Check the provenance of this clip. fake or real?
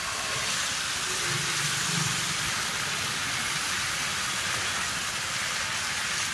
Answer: real